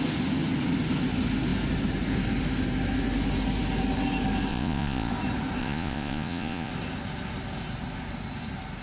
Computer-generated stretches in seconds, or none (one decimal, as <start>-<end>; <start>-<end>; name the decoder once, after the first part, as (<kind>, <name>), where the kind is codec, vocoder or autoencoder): 4.5-5.1 (vocoder, Vocos); 5.6-6.7